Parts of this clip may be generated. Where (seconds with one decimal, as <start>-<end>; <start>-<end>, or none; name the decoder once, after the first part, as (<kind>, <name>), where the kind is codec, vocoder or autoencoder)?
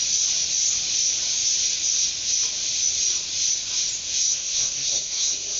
4.3-5.6 (codec, SNAC)